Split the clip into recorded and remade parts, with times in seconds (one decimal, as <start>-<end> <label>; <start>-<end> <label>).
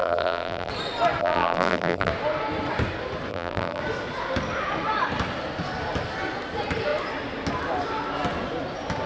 0.0-0.7 remade; 0.7-1.2 recorded; 1.2-2.1 remade; 2.1-3.3 recorded; 3.3-3.8 remade; 3.8-9.1 recorded